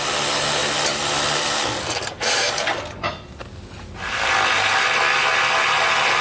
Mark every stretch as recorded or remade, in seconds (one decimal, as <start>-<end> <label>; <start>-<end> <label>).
0.0-1.8 recorded; 1.8-2.5 remade; 2.5-6.2 recorded